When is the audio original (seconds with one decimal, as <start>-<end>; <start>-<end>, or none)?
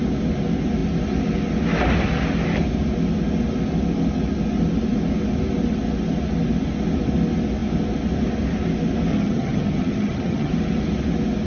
0.0-9.1; 10.5-11.5